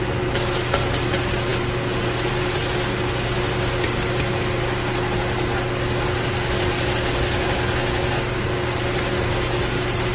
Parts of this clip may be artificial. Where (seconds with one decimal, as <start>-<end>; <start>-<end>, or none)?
none

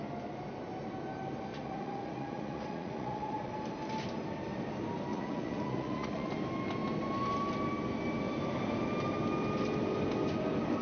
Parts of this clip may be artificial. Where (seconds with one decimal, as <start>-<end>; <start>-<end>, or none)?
1.5-3.5; 5.1-6.3

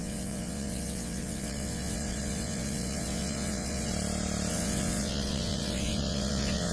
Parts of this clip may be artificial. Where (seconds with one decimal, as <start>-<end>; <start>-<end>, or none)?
0.0-3.9; 4.5-6.7

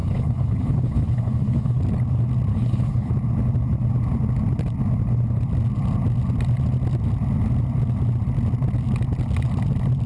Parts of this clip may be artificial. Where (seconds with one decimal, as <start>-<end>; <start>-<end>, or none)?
0.0-1.8; 2.5-3.1

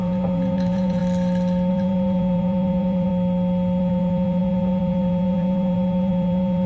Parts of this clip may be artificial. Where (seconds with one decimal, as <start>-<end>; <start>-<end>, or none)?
0.0-1.0; 1.7-3.1; 3.8-6.7

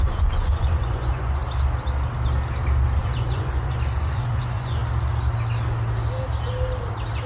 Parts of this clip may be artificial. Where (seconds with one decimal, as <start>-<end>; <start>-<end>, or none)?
0.0-1.4; 3.0-4.8

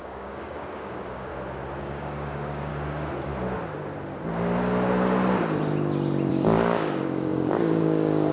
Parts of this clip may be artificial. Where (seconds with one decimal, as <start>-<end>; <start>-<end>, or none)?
0.0-1.3; 1.8-2.7; 6.3-8.3